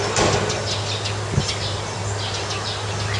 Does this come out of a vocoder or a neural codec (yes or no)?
no